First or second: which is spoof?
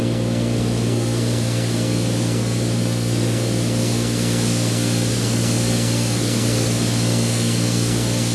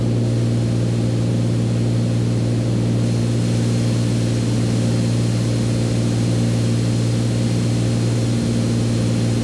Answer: first